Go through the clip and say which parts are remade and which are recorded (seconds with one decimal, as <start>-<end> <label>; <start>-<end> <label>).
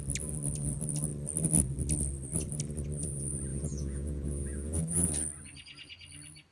0.0-3.5 recorded; 3.5-5.1 remade; 5.1-6.5 recorded